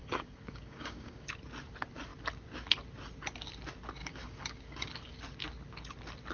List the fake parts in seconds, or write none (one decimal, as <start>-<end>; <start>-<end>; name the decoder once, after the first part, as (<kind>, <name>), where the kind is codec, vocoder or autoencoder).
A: 0.0-1.3 (codec, DAC); 4.0-4.9